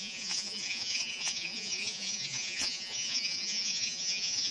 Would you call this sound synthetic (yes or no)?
yes